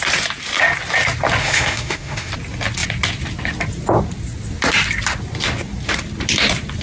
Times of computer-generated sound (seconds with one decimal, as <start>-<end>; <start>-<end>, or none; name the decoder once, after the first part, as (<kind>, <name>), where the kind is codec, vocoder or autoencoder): 1.4-2.3 (autoencoder, DAC-VAE)